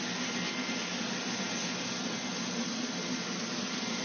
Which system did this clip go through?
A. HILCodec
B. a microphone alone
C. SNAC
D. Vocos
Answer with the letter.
B